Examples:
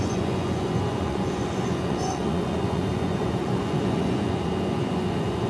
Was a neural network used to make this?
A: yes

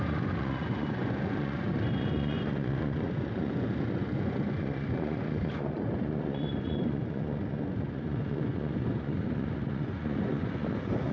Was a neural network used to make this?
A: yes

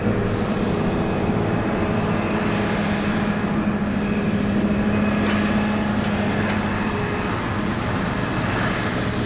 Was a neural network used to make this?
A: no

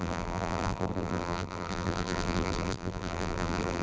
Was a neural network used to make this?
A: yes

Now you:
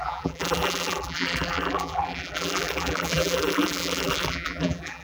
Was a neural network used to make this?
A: yes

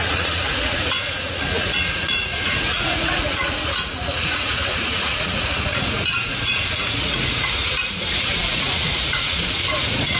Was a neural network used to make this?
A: yes